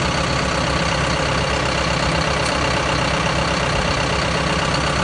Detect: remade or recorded recorded